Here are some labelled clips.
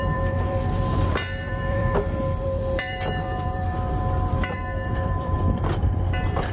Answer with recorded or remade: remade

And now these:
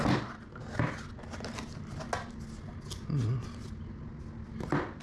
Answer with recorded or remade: recorded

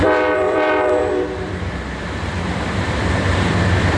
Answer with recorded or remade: remade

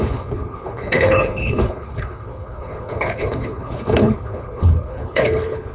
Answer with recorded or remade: remade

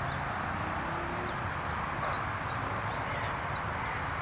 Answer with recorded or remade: recorded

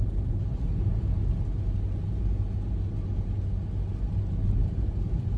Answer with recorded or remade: recorded